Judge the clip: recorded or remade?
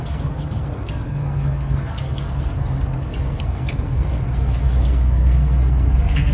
remade